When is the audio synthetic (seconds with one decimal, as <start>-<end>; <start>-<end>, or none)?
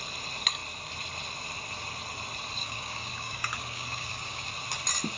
2.6-4.5